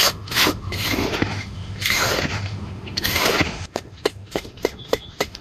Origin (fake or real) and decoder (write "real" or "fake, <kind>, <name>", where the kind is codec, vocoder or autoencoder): fake, autoencoder, DAC-VAE